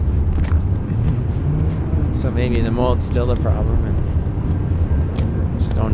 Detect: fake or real real